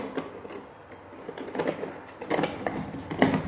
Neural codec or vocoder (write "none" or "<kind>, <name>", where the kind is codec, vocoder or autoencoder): none